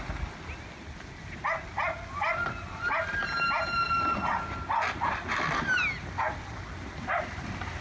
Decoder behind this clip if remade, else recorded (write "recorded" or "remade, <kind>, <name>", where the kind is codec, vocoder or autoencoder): recorded